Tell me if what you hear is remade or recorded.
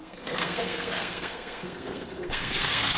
remade